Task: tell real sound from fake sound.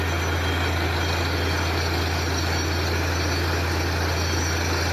real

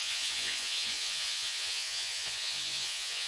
fake